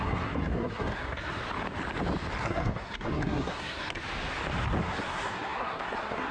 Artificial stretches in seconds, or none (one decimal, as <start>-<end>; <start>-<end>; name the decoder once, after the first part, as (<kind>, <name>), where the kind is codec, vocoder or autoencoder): 0.0-1.4 (codec, SNAC); 2.4-4.0; 4.8-6.3